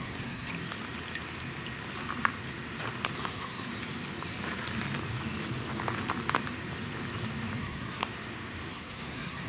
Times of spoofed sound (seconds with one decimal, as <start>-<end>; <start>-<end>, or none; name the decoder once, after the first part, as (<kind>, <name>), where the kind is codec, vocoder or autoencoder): 0.0-0.5 (codec, SNAC); 3.2-3.7; 7.6-8.0; 8.7-9.5